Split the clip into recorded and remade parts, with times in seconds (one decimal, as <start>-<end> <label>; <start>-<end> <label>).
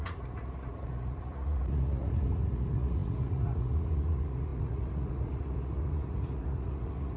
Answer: 0.0-7.2 remade